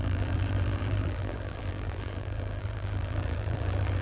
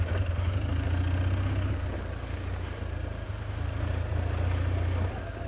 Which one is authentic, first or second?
second